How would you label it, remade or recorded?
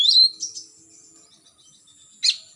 recorded